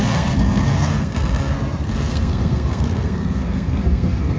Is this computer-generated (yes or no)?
yes